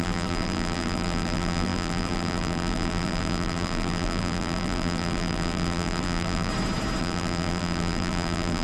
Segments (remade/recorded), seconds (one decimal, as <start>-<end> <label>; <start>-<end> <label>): 0.0-6.5 remade; 6.5-7.0 recorded; 7.0-8.6 remade